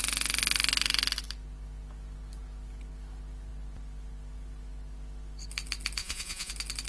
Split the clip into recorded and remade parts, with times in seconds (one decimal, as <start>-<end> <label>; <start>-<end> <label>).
0.0-6.0 recorded; 6.0-6.5 remade; 6.5-6.9 recorded

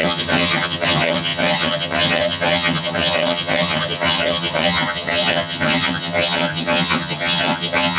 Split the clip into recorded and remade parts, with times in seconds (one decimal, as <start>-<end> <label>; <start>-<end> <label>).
0.0-8.0 remade